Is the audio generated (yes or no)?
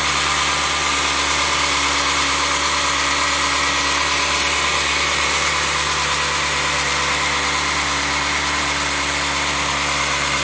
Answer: no